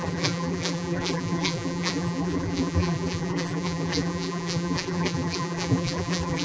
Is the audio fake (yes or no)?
yes